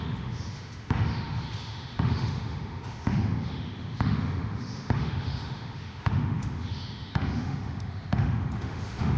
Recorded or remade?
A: remade